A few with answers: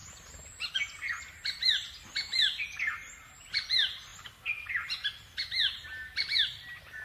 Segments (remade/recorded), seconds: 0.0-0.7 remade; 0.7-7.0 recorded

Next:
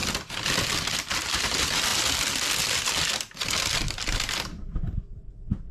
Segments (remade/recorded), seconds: 0.0-0.8 recorded; 0.8-1.9 remade; 1.9-5.3 recorded; 5.3-5.7 remade

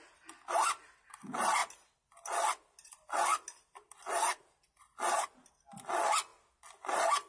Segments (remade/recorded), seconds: 0.0-7.3 recorded

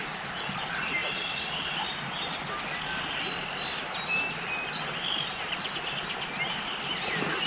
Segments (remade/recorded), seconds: 0.0-7.5 recorded

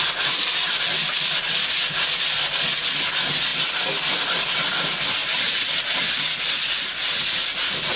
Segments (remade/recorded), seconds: 0.0-8.0 recorded